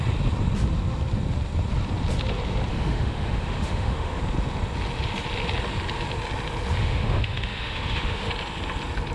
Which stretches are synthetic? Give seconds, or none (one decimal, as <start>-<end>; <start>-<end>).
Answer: 2.7-4.2; 6.8-8.3